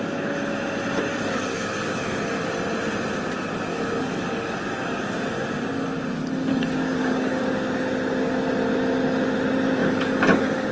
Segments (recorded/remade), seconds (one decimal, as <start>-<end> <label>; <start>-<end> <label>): 0.0-1.1 recorded; 1.1-2.4 remade; 2.4-3.7 recorded; 3.7-5.0 remade; 5.0-6.5 recorded; 6.5-7.4 remade; 7.4-9.8 recorded; 9.8-10.7 remade